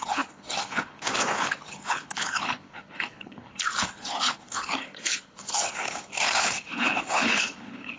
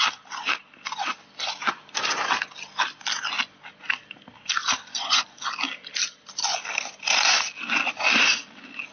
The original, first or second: second